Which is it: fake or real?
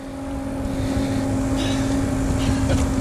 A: real